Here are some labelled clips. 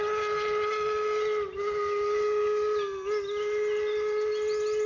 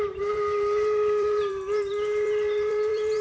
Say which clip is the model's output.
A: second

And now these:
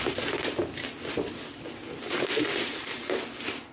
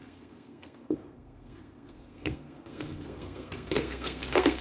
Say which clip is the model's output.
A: second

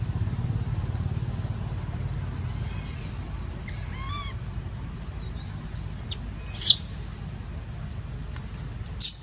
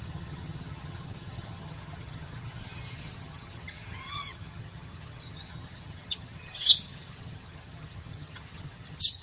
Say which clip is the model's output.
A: second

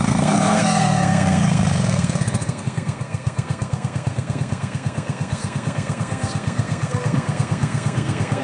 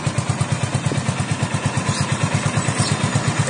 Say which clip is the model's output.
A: first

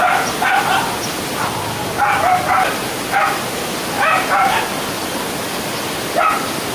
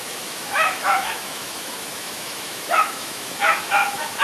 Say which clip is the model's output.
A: second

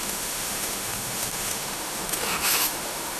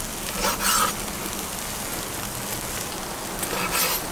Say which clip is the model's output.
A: first